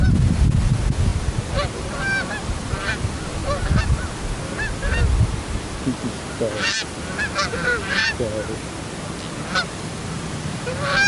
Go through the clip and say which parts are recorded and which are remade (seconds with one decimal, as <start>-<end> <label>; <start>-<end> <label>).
0.0-3.4 remade; 3.4-7.5 recorded; 7.5-8.0 remade; 8.0-9.5 recorded; 9.5-11.1 remade